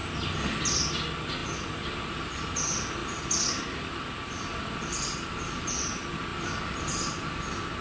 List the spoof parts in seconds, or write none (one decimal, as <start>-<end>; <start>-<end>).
none